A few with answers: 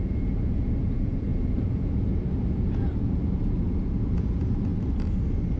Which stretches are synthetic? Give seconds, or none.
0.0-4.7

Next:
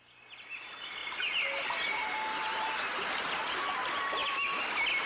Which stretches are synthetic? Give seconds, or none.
none

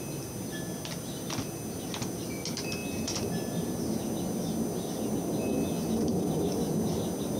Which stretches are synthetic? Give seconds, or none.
none

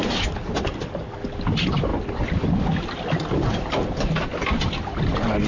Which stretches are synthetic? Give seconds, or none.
none

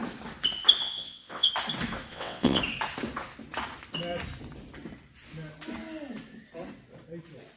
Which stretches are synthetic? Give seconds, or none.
0.8-1.5; 2.1-2.6

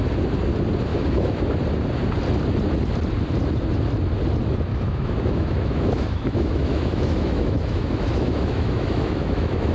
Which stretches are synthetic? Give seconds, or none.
0.9-1.4; 4.7-9.7

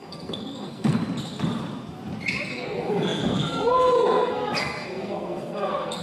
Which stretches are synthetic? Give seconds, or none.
0.0-1.0; 2.5-6.0

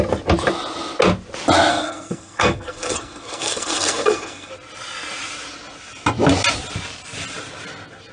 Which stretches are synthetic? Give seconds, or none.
1.7-4.5